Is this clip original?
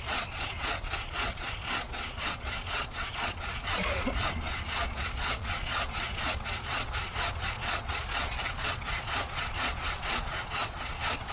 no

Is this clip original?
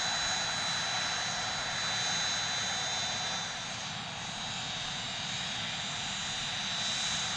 yes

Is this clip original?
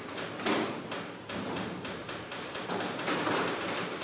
no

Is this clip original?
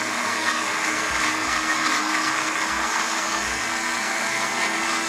no